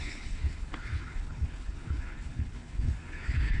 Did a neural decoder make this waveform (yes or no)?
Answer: yes